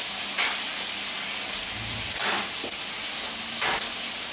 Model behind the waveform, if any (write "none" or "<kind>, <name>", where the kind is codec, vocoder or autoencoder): none